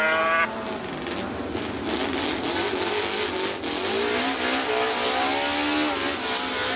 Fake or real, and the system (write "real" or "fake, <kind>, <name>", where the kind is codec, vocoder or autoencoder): real